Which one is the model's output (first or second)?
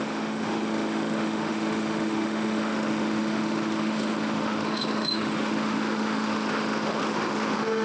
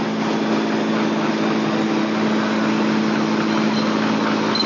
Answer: first